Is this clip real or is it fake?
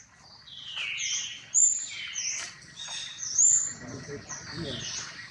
real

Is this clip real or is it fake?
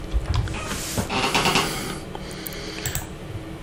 real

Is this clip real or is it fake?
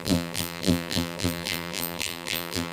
fake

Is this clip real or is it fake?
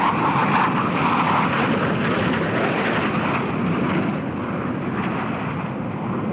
real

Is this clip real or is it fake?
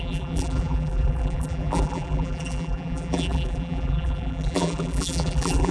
fake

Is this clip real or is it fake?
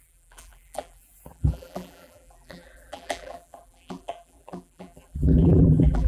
fake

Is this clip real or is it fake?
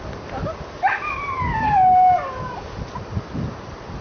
real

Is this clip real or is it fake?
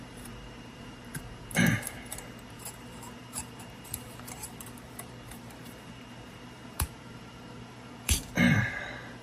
fake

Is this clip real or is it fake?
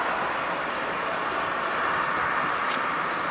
real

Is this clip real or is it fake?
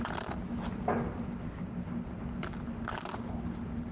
real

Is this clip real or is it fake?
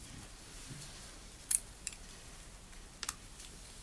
real